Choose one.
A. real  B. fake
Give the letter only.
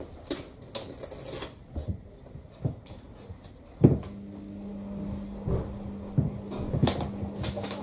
A